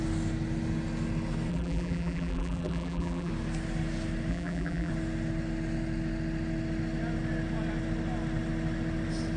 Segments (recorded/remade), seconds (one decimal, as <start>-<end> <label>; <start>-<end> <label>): 0.0-1.5 recorded; 1.5-3.3 remade; 3.3-4.3 recorded; 4.3-4.9 remade; 4.9-9.4 recorded